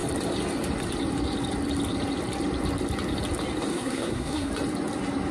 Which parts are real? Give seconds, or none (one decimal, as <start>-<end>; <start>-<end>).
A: 0.0-3.7; 4.5-5.3